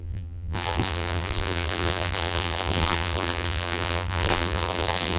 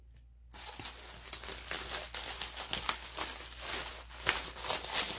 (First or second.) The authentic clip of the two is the second